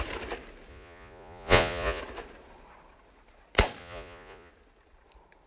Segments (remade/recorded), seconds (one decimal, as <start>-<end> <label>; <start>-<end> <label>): 0.0-0.7 recorded; 0.7-2.0 remade; 2.0-3.8 recorded; 3.8-4.5 remade; 4.5-5.5 recorded